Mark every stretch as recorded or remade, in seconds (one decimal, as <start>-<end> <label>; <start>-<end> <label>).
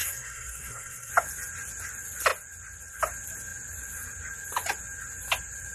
0.0-1.1 remade; 1.1-5.7 recorded